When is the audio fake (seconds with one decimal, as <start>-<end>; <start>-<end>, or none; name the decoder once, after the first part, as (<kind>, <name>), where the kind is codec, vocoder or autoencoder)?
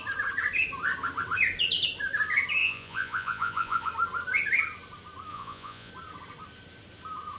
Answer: 2.6-3.9 (vocoder, Vocos); 5.3-5.9